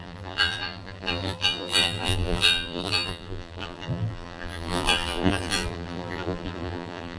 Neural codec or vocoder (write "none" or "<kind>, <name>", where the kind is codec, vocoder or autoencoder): vocoder, BigVGAN v2